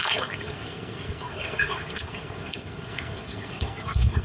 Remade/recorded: remade